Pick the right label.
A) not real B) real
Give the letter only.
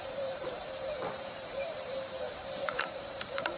A